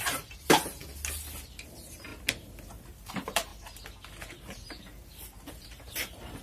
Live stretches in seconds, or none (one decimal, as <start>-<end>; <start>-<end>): 0.8-1.7; 2.1-3.1; 3.5-4.3

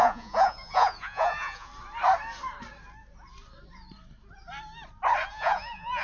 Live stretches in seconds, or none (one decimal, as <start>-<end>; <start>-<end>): 1.7-5.3